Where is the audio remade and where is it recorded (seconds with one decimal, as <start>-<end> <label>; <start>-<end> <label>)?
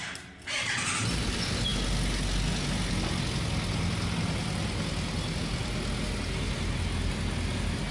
0.0-7.9 recorded